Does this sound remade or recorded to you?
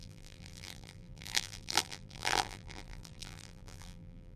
remade